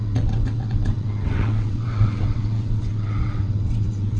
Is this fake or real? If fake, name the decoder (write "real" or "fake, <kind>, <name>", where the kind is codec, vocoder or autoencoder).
fake, vocoder, WaveNeXt